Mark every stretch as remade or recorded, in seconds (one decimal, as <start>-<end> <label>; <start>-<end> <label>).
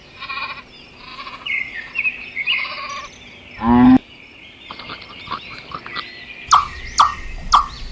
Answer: 0.0-1.1 recorded; 1.1-1.9 remade; 1.9-4.0 recorded; 4.0-4.8 remade; 4.8-7.9 recorded